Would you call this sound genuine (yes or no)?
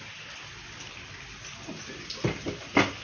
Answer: yes